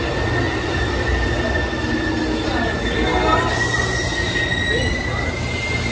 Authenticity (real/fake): real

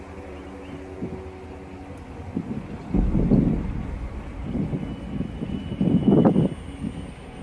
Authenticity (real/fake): real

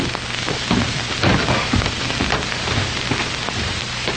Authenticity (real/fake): real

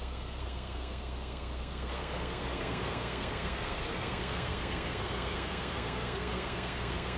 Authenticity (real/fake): fake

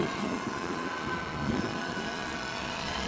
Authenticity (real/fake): fake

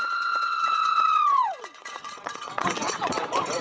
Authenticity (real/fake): fake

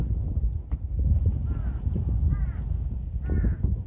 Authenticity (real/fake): real